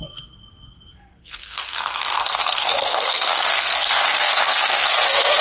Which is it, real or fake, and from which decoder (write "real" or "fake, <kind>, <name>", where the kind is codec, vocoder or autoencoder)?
fake, codec, SNAC